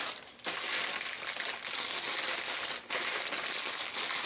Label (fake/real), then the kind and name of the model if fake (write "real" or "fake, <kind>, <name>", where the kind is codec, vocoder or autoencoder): real